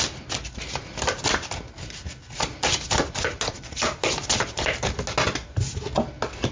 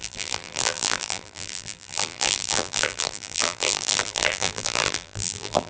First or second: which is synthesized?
second